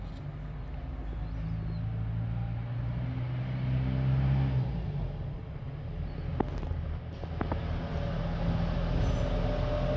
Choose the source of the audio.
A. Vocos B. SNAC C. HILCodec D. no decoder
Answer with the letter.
D